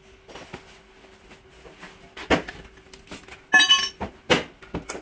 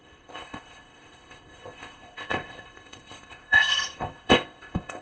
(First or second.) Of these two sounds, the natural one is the first